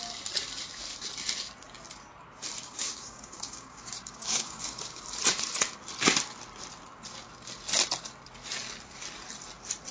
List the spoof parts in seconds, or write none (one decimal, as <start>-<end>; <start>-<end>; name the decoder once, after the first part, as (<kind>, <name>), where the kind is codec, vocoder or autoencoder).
2.6-5.0 (codec, DAC)